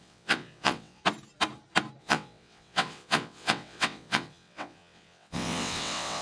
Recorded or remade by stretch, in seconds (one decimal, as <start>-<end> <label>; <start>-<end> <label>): 0.0-1.0 remade; 1.0-2.0 recorded; 2.0-6.2 remade